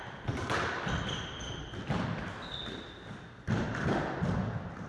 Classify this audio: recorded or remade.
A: recorded